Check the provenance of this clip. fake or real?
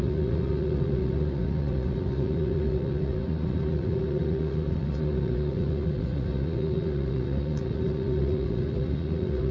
fake